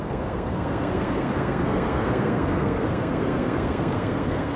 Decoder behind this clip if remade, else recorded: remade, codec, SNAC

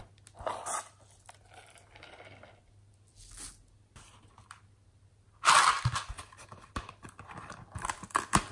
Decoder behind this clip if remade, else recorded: recorded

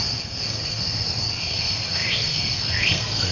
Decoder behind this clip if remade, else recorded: remade, codec, SNAC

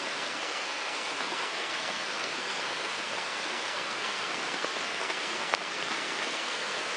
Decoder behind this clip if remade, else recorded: remade, codec, SNAC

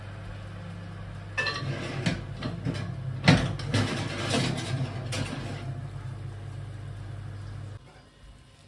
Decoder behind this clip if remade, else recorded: recorded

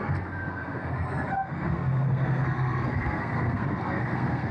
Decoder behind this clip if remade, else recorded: remade, codec, SNAC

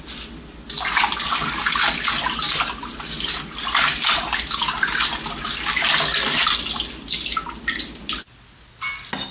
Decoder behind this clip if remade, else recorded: recorded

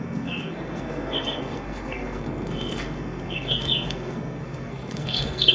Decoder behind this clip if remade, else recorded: remade, codec, SNAC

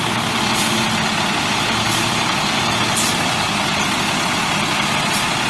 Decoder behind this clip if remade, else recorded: recorded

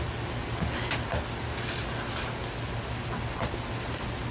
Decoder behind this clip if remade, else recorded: recorded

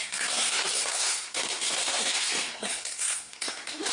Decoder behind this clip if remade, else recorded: remade, codec, SNAC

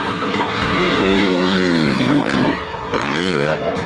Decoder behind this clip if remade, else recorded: remade, codec, SNAC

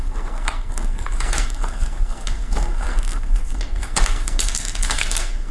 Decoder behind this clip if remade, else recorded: remade, codec, SNAC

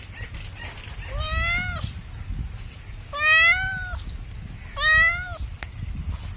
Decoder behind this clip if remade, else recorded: recorded